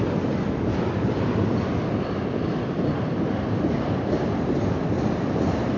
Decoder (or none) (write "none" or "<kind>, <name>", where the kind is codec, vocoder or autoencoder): vocoder, BigVGAN v2